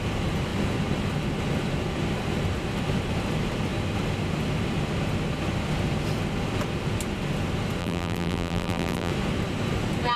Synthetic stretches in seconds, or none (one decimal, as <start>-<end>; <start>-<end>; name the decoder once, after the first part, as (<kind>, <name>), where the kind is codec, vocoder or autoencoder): 7.8-9.1 (vocoder, BigVGAN v2)